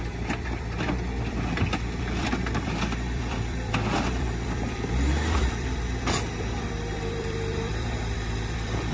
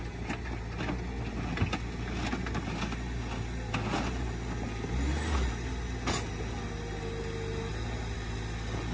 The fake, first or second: first